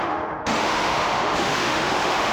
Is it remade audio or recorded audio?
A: remade